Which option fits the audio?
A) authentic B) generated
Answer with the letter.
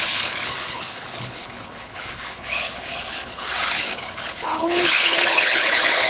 B